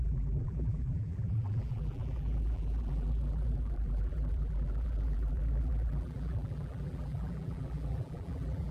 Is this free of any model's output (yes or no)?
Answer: no